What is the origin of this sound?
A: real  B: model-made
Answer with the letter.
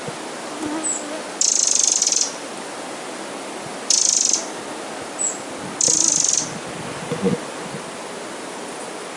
A